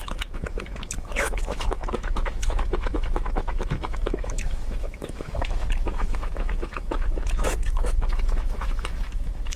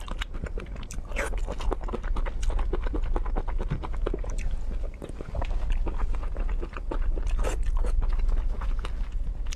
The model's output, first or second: first